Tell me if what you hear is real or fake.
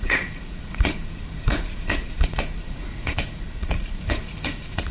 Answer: fake